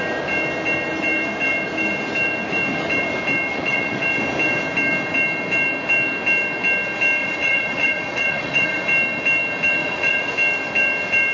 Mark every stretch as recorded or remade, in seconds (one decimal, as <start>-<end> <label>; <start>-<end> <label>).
0.0-3.5 recorded; 3.5-4.0 remade; 4.0-7.2 recorded; 7.2-8.8 remade; 8.8-9.8 recorded; 9.8-10.3 remade; 10.3-11.3 recorded